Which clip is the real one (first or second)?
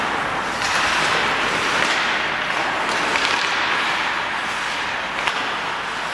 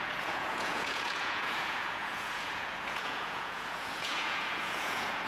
first